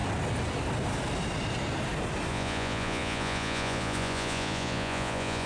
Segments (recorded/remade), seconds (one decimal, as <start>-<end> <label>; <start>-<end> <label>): 0.0-2.3 recorded; 2.3-5.5 remade